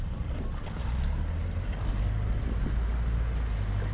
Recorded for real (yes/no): yes